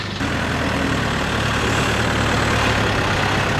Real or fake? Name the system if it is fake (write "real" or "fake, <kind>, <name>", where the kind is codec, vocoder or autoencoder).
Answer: real